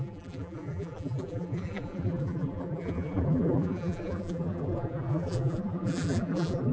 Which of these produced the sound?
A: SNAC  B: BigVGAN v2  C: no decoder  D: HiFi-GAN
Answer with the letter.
B